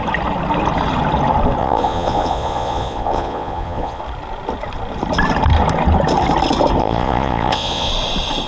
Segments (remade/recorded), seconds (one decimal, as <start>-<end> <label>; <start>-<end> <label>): 0.0-1.6 recorded; 1.6-4.0 remade; 4.0-6.8 recorded; 6.8-7.9 remade; 7.9-8.5 recorded